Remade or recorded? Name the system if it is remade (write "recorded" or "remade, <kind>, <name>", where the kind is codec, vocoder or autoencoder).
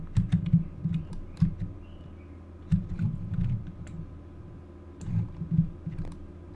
recorded